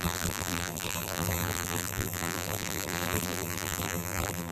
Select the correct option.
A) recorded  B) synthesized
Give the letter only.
B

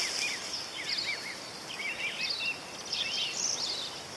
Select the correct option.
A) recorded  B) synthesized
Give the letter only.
A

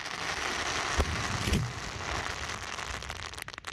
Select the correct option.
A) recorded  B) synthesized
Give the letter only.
A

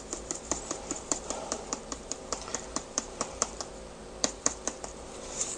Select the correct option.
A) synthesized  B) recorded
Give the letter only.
A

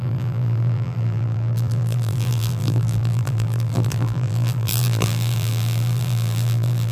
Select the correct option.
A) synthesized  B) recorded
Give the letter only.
A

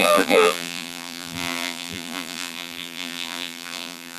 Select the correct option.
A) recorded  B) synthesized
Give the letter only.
B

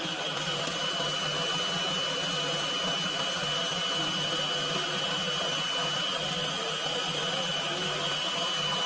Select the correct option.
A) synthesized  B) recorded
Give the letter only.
B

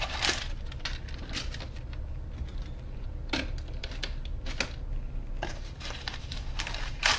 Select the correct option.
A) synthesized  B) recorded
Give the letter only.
B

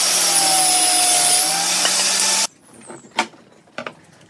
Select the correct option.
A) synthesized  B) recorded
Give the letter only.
B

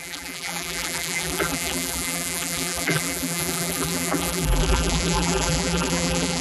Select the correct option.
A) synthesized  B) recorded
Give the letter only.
A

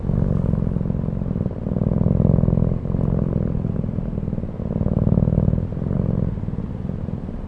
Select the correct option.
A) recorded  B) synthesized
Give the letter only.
A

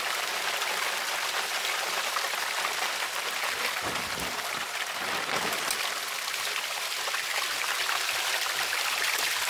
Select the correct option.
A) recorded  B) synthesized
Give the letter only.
A